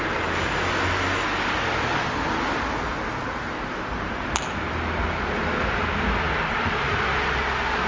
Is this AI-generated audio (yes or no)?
no